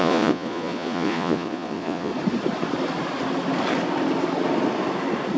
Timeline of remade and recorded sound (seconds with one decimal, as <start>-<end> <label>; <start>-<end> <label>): 0.0-2.1 remade; 2.1-5.4 recorded